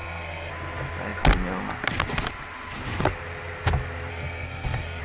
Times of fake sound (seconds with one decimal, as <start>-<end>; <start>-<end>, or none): 0.0-0.5; 4.1-5.0